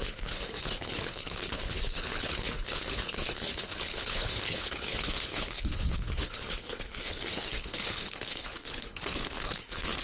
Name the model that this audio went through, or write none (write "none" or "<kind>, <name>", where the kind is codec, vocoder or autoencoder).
codec, HILCodec